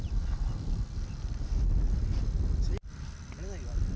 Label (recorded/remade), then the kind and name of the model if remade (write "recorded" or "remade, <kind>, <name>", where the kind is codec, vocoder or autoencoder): recorded